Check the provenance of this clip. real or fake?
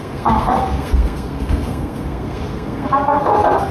fake